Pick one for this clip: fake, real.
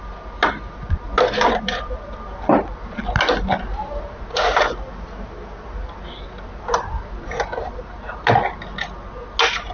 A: real